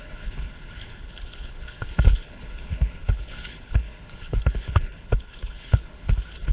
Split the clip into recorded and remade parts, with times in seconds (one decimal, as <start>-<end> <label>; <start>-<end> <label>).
0.0-6.5 remade